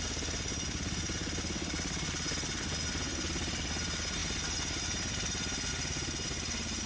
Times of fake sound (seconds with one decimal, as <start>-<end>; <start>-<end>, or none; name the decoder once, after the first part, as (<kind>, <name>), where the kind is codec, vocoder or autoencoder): none